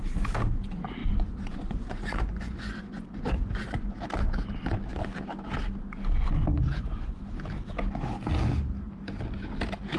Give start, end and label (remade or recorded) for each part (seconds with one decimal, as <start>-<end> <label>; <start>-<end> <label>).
0.0-1.0 recorded; 1.0-3.9 remade; 3.9-6.5 recorded; 6.5-7.2 remade; 7.2-10.0 recorded